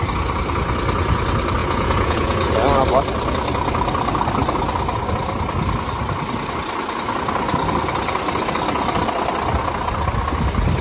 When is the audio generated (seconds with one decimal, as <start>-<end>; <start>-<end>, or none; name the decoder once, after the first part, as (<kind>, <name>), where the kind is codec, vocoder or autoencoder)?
1.6-2.5 (vocoder, Vocos)